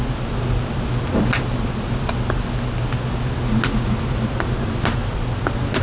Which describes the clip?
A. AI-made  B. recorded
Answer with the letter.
B